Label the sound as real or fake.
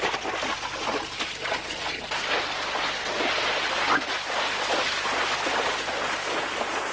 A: real